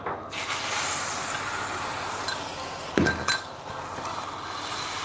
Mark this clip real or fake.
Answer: real